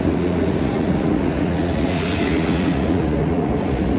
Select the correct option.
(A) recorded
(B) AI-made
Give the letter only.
B